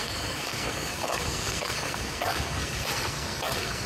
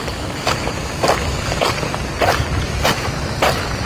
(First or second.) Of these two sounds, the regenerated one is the first